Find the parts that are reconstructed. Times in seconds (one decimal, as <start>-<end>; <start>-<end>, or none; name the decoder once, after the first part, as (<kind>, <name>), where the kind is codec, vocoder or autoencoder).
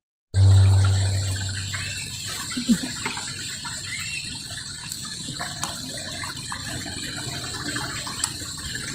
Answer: 4.8-5.4 (codec, DAC)